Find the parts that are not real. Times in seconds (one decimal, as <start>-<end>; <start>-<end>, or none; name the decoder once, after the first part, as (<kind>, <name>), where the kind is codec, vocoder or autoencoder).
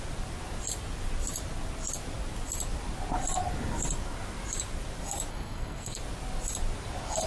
5.3-6.0 (codec, SNAC)